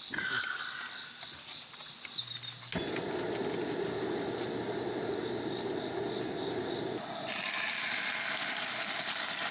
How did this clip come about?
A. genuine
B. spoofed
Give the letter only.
A